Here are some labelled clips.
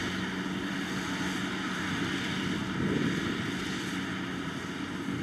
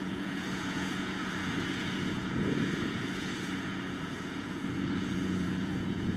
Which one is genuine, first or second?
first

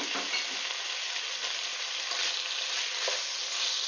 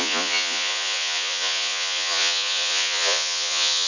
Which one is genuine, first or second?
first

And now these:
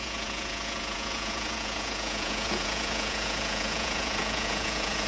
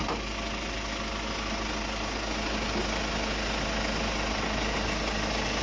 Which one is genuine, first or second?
second